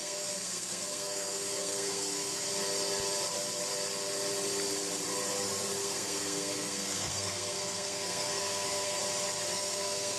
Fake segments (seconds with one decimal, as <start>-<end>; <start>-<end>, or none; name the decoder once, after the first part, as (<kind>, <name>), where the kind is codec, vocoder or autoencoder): 0.0-2.5 (codec, SNAC); 5.8-9.0; 9.5-10.2